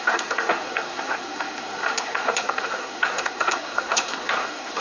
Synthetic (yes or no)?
yes